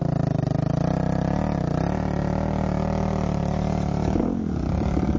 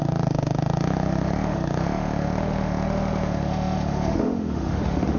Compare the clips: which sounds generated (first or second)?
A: second